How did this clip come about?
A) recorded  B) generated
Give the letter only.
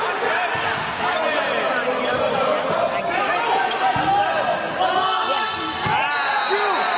A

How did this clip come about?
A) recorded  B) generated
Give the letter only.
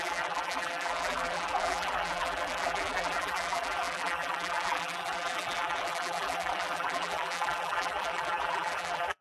B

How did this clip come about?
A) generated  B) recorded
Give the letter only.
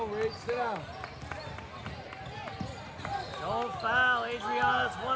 B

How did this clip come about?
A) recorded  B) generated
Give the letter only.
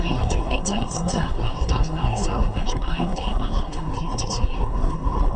B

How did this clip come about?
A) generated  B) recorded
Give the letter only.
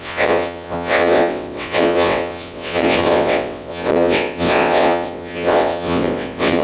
A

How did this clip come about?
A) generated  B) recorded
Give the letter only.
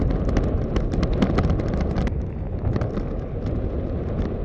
B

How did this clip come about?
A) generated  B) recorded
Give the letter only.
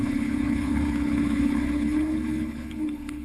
A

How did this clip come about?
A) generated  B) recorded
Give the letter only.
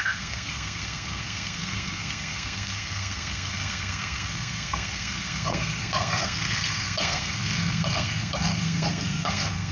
A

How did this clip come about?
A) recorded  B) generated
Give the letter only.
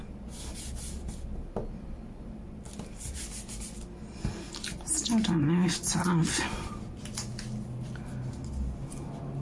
A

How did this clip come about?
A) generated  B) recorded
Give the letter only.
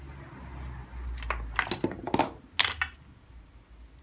B